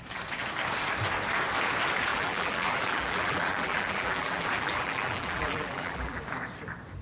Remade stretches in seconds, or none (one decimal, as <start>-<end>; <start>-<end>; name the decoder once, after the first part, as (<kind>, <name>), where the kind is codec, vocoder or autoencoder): 2.1-6.2 (vocoder, BigVGAN v2)